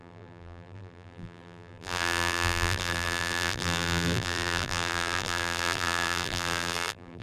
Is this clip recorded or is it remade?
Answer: remade